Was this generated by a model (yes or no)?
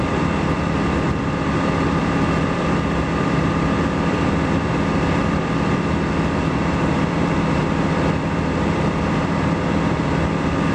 yes